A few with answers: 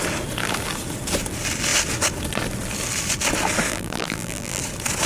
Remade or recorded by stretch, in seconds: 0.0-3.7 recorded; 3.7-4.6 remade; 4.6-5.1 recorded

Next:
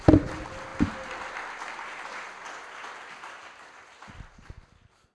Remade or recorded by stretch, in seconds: 0.0-5.1 recorded